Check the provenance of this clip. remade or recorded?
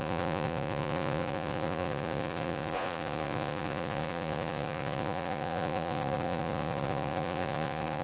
remade